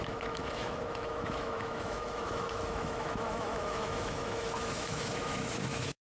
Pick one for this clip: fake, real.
fake